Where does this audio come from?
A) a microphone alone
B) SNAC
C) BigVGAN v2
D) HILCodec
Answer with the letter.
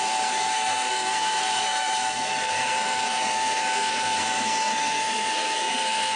B